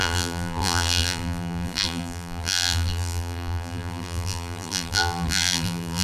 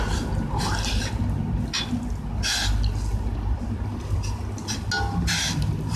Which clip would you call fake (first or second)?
first